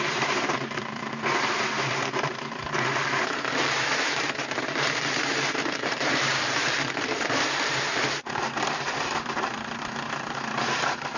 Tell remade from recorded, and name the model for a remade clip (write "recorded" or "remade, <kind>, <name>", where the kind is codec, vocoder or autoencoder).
remade, vocoder, BigVGAN v2